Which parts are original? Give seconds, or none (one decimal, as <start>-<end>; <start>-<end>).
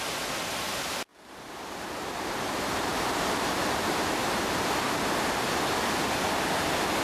0.0-7.0